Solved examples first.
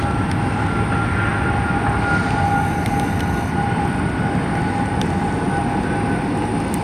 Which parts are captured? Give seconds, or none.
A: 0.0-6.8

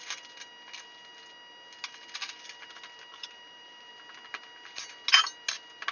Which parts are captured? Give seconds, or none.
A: 0.0-3.1; 3.9-5.9

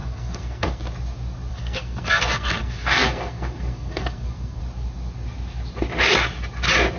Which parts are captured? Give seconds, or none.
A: 0.8-1.5; 4.6-7.0

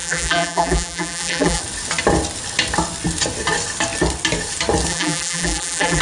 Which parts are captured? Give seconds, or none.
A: 1.6-4.9

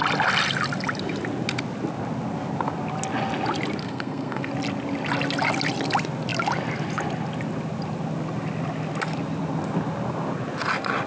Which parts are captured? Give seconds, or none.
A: 0.0-3.8; 4.5-11.1

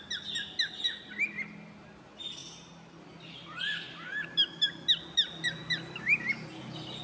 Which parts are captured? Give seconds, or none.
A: 0.0-7.0

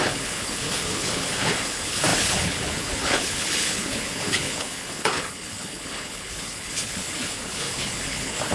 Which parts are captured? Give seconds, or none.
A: none